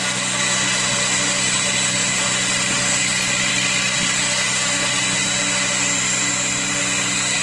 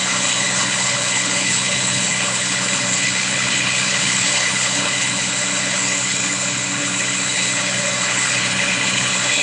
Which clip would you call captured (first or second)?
first